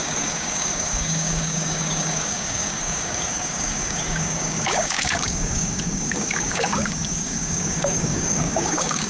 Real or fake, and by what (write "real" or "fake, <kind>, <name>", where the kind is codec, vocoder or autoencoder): fake, codec, DAC